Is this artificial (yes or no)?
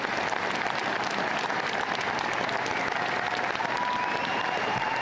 no